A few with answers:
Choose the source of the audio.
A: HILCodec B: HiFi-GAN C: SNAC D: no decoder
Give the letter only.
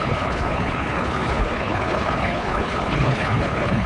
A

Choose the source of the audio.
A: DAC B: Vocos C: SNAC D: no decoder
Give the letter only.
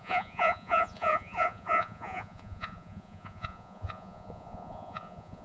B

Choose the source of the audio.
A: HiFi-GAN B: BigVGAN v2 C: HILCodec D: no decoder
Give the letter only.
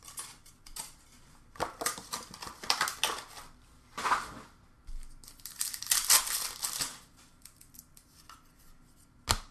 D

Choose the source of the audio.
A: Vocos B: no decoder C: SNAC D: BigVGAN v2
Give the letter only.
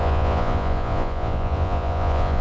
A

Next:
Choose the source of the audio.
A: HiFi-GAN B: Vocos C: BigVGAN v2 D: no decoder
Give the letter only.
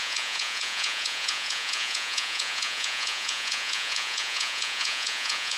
B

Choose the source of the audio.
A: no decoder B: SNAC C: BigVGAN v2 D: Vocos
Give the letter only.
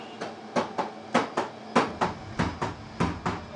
A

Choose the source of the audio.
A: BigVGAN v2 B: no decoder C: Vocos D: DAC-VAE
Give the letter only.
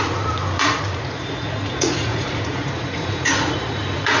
C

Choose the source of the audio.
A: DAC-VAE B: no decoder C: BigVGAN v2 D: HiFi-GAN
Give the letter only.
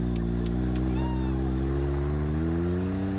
B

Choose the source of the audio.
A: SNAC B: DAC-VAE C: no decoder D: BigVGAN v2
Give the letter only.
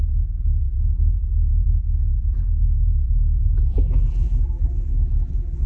D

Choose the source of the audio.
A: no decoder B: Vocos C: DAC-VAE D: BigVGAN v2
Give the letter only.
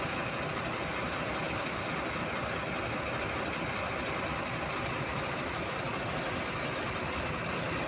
A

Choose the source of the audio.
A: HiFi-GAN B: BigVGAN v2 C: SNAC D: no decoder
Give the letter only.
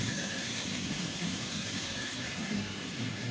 C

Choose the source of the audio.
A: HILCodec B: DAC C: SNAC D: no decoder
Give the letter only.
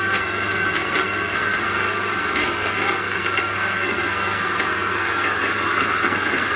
C